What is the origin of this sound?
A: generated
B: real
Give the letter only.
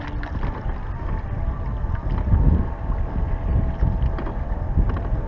B